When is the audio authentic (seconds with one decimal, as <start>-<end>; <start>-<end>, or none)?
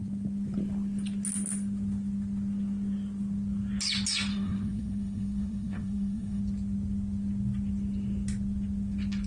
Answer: 0.0-4.3; 6.4-9.3